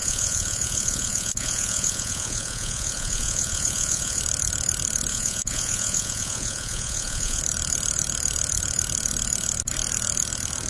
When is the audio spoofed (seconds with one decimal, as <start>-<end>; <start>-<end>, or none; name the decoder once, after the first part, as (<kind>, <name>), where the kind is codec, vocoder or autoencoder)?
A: 0.0-4.2 (vocoder, Vocos); 5.1-7.4